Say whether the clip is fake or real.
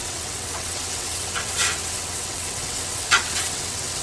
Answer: fake